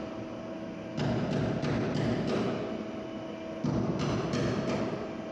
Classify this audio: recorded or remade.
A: recorded